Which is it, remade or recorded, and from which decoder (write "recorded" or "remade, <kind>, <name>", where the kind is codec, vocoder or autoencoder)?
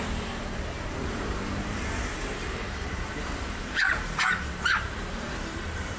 remade, vocoder, BigVGAN v2